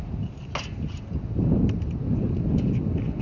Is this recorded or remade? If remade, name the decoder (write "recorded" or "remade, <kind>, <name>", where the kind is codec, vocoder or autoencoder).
recorded